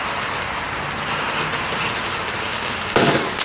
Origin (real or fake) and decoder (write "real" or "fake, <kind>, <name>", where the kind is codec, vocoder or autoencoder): real